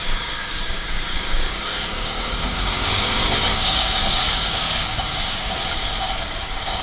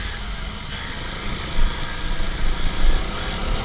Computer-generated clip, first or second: first